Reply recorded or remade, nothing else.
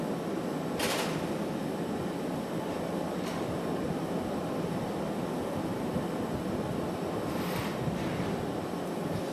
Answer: recorded